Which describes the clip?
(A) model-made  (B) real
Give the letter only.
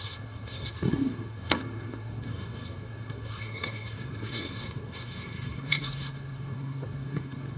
A